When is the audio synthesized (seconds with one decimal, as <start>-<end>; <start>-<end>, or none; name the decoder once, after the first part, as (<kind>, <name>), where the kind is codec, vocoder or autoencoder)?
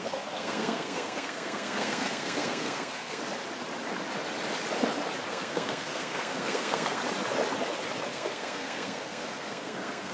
0.0-3.2 (codec, SNAC); 5.3-7.0; 8.1-10.1